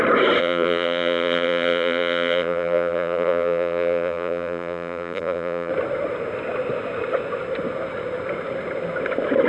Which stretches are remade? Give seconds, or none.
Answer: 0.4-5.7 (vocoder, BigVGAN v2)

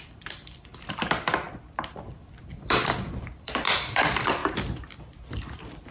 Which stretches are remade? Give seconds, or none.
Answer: 0.0-0.7 (vocoder, BigVGAN v2); 2.4-4.4

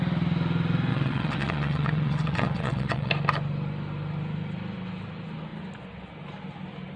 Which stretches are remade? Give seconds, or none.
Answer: 0.9-3.1 (vocoder, WaveNeXt)

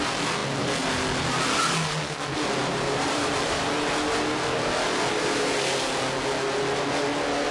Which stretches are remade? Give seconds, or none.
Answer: 2.6-3.7 (vocoder, BigVGAN v2)